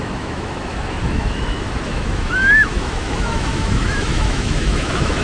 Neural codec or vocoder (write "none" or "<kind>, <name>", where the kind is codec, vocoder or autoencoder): autoencoder, DAC-VAE